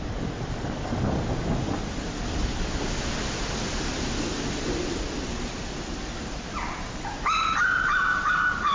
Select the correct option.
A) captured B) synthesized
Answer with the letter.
A